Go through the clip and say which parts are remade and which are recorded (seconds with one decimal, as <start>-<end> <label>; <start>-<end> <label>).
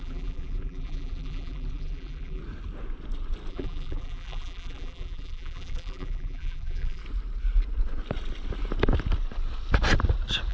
0.0-2.4 remade; 2.4-3.5 recorded; 3.5-7.0 remade; 7.0-10.5 recorded